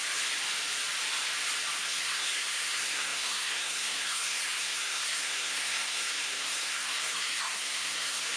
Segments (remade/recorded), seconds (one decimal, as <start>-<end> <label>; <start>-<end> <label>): 0.0-1.8 recorded; 1.8-8.4 remade